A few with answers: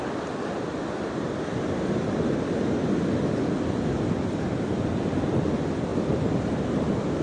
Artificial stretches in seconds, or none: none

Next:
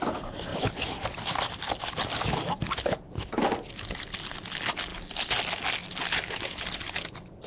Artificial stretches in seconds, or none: 0.5-3.3 (vocoder, BigVGAN v2)

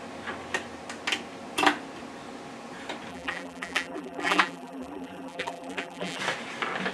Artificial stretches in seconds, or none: 3.1-6.2 (vocoder, BigVGAN v2)

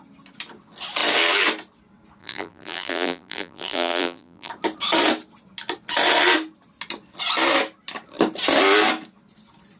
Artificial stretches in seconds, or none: 2.2-4.5 (vocoder, BigVGAN v2)